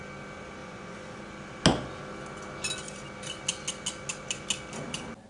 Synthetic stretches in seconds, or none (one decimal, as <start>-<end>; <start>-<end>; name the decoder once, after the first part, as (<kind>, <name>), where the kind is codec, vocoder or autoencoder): 0.6-1.2 (vocoder, Vocos)